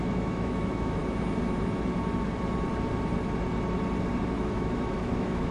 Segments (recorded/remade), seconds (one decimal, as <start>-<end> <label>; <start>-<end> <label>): 0.0-1.0 remade; 1.0-4.3 recorded; 4.3-5.5 remade